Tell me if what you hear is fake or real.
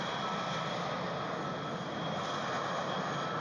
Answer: real